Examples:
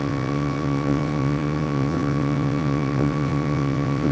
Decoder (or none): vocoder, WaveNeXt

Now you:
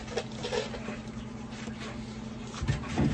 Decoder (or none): none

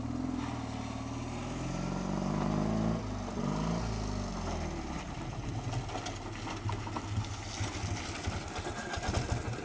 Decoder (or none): none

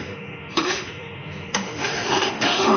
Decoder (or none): autoencoder, DAC-VAE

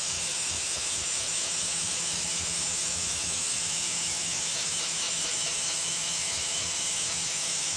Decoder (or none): autoencoder, DAC-VAE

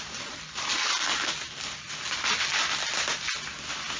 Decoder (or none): none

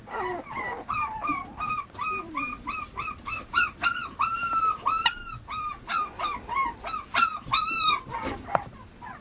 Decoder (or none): vocoder, BigVGAN v2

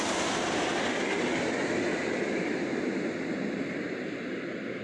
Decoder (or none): none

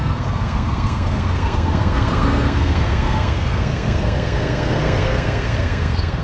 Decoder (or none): codec, SNAC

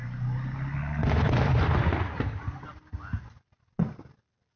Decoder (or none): none